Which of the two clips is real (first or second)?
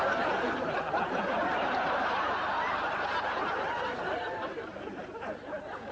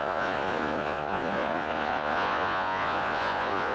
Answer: first